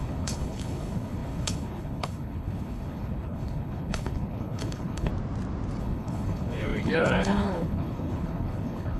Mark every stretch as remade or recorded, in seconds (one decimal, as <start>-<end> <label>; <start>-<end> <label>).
0.0-5.1 remade; 5.1-5.8 recorded; 5.8-9.0 remade